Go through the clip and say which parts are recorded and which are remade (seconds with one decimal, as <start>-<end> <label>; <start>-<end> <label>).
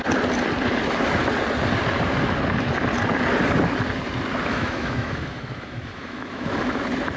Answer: 0.0-4.5 recorded; 4.5-6.8 remade; 6.8-7.2 recorded